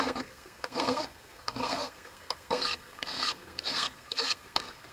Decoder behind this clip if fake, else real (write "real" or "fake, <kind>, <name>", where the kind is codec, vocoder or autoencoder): fake, codec, SNAC